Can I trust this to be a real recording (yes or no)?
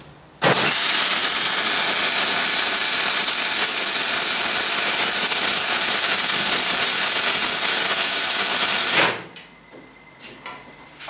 yes